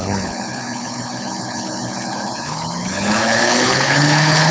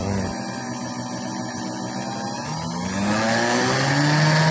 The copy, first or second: first